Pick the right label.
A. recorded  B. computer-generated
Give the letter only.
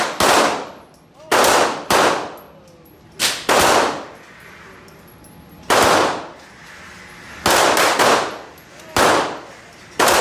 A